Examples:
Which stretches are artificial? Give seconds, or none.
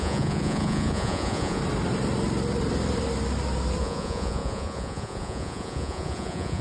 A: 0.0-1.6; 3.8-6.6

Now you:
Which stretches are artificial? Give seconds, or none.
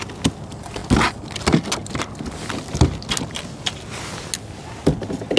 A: none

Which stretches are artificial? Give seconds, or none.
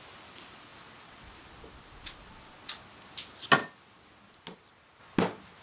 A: none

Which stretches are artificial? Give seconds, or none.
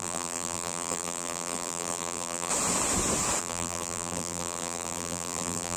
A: 0.0-2.5; 3.4-5.8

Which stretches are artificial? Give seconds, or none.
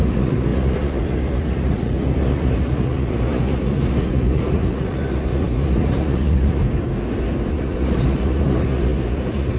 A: 0.0-6.6; 7.5-9.6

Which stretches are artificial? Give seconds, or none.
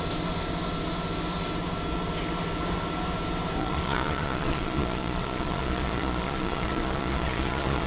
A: 3.6-7.9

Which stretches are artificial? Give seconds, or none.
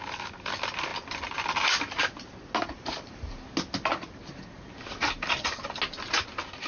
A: none